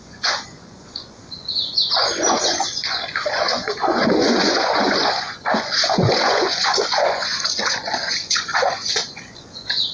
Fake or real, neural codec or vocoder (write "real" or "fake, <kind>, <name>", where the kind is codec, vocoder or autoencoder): fake, vocoder, Vocos